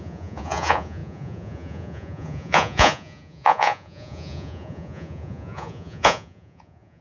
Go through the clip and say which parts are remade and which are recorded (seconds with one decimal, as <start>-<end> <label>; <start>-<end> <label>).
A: 0.0-7.0 remade